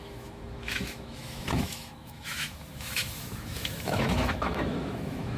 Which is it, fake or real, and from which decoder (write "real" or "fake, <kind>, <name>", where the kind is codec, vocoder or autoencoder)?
fake, autoencoder, DAC-VAE